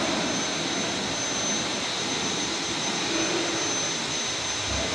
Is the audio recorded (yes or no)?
yes